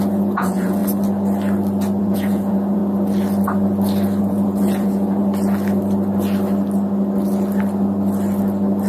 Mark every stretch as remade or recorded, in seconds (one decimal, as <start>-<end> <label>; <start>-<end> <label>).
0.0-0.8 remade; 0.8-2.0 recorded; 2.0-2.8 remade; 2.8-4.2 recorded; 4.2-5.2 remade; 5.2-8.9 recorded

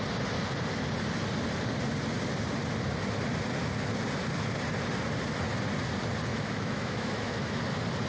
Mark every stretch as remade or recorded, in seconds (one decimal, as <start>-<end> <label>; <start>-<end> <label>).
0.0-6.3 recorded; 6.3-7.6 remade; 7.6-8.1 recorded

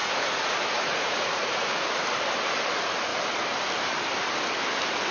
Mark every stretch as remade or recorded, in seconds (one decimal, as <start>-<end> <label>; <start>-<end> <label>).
0.0-2.0 remade; 2.0-5.1 recorded